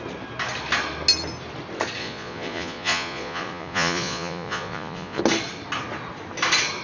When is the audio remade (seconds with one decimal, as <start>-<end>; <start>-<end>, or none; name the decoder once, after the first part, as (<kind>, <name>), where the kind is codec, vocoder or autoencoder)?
2.0-5.2 (vocoder, Vocos)